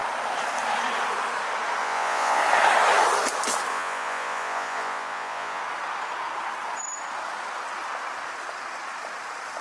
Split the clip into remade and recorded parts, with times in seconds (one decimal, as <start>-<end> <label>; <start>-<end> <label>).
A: 0.0-1.8 recorded; 1.8-2.4 remade; 2.4-3.7 recorded; 3.7-5.6 remade; 5.6-9.6 recorded